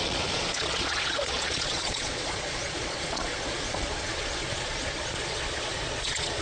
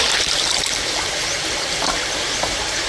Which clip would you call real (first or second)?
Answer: second